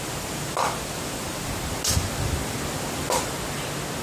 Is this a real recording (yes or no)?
yes